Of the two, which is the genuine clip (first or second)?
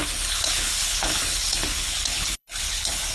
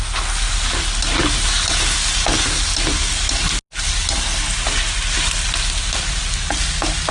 second